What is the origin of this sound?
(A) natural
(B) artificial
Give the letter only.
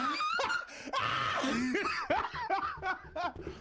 A